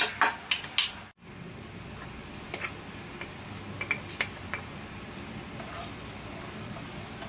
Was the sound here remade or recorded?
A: recorded